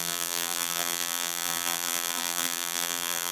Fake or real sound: fake